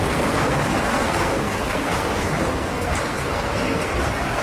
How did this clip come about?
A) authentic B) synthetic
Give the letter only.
B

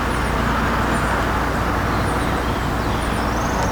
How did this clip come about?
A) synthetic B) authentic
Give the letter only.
B